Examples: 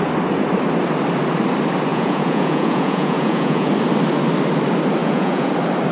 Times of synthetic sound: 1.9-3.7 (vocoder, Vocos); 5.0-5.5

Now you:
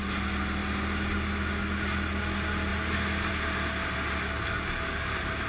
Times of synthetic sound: none

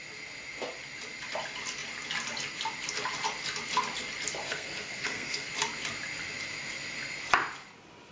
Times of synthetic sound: 4.4-5.5 (codec, SNAC)

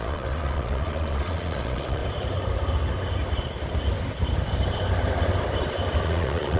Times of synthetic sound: 0.0-2.0 (vocoder, Vocos); 6.0-6.6

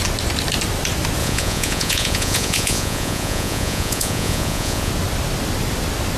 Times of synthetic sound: 1.2-4.9 (vocoder, Vocos)

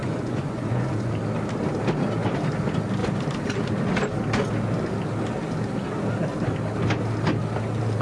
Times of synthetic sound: 0.0-1.1 (vocoder, Vocos)

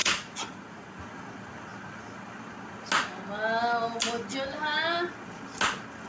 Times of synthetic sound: 0.0-1.0 (vocoder, Vocos)